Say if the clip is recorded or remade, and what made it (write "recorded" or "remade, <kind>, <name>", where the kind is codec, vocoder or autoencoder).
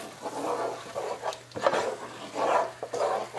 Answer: recorded